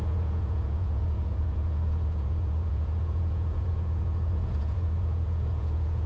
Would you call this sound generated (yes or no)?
yes